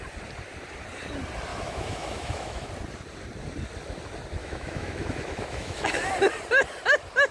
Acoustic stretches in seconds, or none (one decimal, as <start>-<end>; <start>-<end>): 0.0-1.5; 2.7-4.4; 6.1-7.3